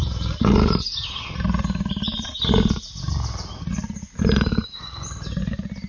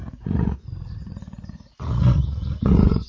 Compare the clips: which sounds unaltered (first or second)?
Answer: first